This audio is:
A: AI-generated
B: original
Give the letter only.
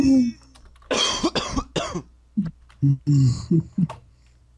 B